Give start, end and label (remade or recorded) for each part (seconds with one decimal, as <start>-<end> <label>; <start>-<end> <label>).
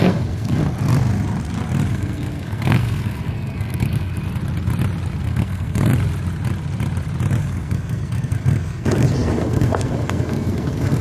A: 0.0-0.6 remade; 0.6-1.9 recorded; 1.9-4.2 remade; 4.2-5.2 recorded; 5.2-5.9 remade; 5.9-7.4 recorded; 7.4-11.0 remade